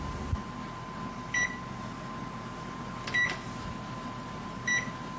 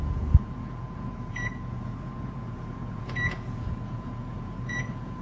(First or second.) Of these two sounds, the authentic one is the first